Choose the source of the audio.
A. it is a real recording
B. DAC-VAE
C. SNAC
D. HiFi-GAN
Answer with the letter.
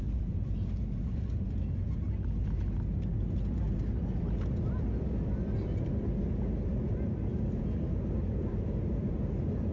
A